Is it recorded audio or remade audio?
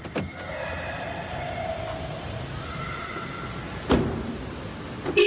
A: recorded